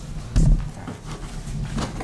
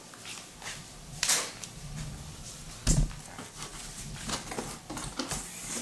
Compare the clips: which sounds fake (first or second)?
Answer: second